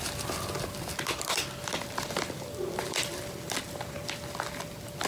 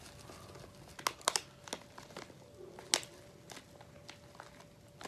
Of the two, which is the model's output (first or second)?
first